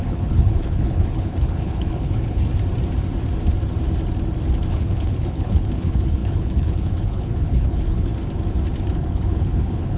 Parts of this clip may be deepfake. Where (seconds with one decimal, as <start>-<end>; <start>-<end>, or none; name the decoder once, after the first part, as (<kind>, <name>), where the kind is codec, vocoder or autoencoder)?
0.0-2.5 (codec, HILCodec); 4.7-8.1; 8.9-10.0